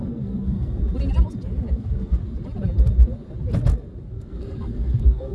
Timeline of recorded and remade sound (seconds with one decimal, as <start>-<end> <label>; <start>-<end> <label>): 0.0-0.8 remade; 0.8-1.7 recorded; 1.7-2.2 remade; 2.2-4.0 recorded; 4.0-5.3 remade